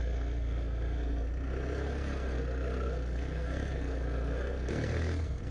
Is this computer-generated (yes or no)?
yes